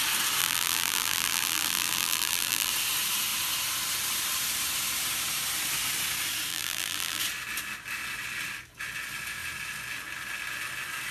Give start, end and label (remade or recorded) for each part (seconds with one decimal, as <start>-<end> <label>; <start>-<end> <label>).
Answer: 0.0-0.4 recorded; 0.4-2.7 remade; 2.7-6.5 recorded; 6.5-7.2 remade; 7.2-11.1 recorded